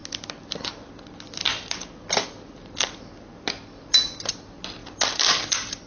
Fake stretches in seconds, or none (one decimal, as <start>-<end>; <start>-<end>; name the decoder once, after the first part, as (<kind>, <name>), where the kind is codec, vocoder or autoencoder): none